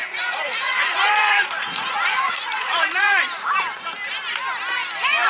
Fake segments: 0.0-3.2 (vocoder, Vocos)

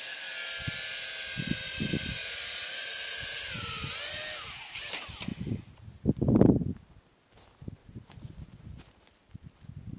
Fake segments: 2.2-3.5 (vocoder, Vocos); 5.3-5.9; 7.8-8.8

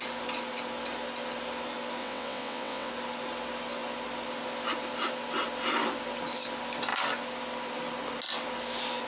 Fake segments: 2.0-2.9 (vocoder, WaveNeXt)

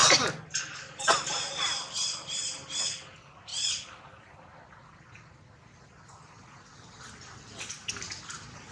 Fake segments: none

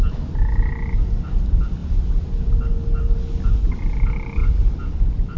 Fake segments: none